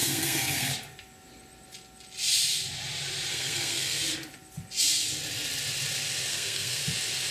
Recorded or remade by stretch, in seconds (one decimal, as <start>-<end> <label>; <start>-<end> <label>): 0.0-0.7 remade; 0.7-3.3 recorded; 3.3-4.0 remade; 4.0-6.3 recorded; 6.3-6.8 remade; 6.8-7.3 recorded